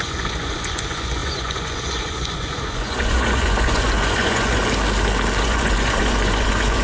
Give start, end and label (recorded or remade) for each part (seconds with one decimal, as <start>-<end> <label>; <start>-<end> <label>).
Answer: 0.0-4.6 remade; 4.6-5.4 recorded; 5.4-6.8 remade